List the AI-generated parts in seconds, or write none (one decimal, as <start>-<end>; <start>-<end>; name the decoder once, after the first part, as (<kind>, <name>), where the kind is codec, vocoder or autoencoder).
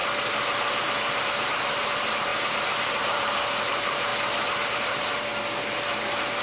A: 1.2-4.1 (vocoder, BigVGAN v2); 4.6-5.3